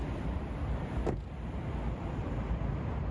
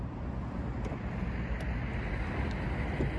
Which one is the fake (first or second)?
first